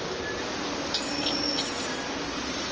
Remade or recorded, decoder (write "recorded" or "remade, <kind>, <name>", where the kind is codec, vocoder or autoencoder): recorded